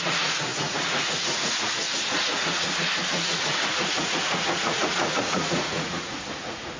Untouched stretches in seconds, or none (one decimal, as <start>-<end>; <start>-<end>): none